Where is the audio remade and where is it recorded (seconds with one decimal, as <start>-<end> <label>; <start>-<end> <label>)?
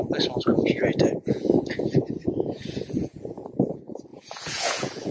0.0-0.5 recorded; 0.5-3.5 remade; 3.5-4.1 recorded; 4.1-5.1 remade